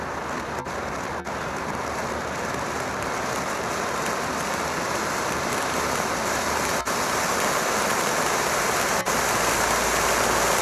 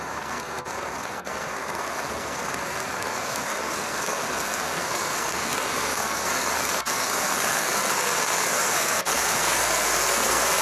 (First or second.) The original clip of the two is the first